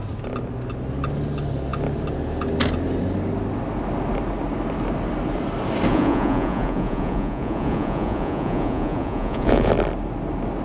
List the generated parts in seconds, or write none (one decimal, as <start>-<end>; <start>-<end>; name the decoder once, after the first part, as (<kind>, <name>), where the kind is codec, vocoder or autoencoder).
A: 5.9-9.7 (vocoder, Vocos)